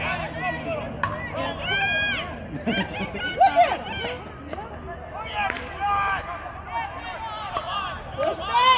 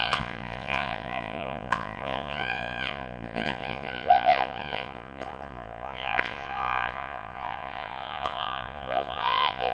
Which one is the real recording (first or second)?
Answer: first